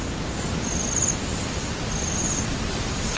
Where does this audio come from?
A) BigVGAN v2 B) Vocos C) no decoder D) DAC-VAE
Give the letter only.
A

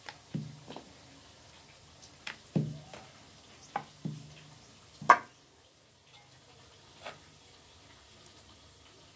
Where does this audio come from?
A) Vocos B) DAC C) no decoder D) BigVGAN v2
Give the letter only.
C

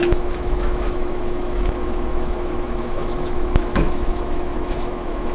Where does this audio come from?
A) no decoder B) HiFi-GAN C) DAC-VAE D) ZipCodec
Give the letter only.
C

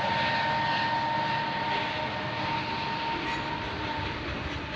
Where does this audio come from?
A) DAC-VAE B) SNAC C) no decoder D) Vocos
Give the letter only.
C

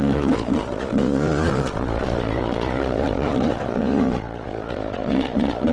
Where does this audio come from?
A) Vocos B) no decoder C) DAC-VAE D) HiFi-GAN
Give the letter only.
A